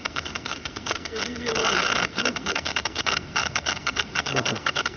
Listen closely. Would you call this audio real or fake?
fake